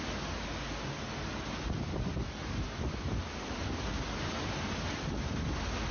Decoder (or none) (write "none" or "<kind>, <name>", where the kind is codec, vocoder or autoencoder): none